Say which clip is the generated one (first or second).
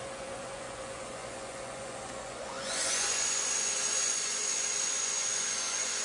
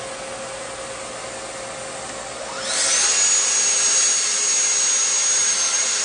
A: first